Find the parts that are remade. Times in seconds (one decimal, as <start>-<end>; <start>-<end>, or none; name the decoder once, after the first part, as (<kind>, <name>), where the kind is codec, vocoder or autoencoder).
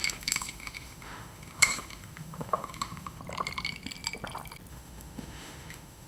0.0-3.2 (autoencoder, DAC-VAE); 4.7-6.1